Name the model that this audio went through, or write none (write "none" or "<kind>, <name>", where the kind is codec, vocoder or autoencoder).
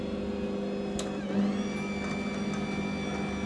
none